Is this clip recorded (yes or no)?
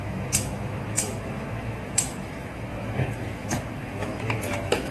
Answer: no